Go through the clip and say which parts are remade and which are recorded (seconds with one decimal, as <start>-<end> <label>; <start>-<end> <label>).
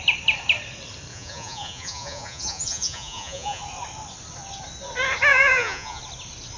0.0-1.1 recorded; 1.1-3.6 remade; 3.6-5.3 recorded; 5.3-6.0 remade; 6.0-6.6 recorded